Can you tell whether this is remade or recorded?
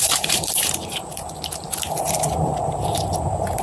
remade